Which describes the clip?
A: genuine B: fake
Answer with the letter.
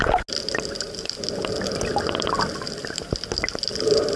A